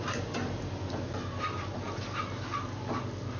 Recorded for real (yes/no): yes